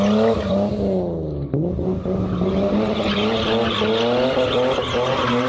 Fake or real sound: real